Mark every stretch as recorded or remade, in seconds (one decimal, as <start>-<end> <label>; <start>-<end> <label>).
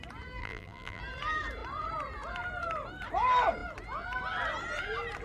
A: 0.0-0.4 recorded; 0.4-1.0 remade; 1.0-5.2 recorded